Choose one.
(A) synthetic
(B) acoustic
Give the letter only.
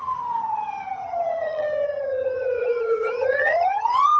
A